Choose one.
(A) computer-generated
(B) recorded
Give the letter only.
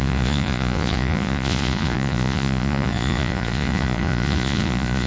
A